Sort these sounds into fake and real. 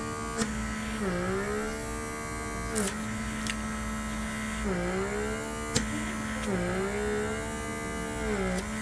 real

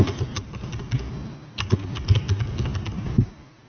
real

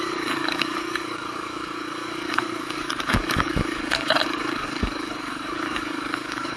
fake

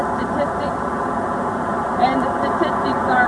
real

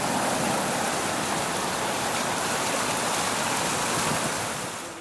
real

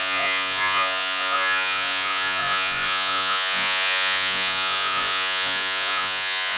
fake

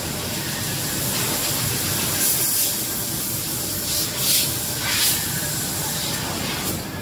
real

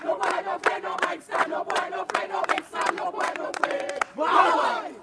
fake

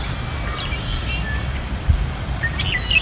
real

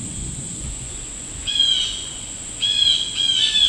fake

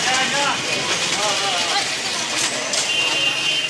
real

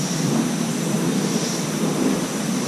fake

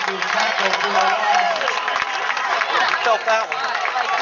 real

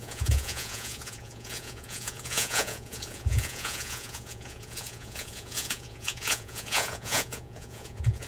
fake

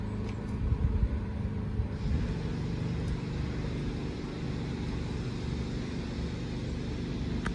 real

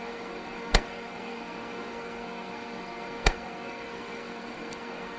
fake